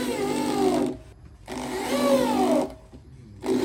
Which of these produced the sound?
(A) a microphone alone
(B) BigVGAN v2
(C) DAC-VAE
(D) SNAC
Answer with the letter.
A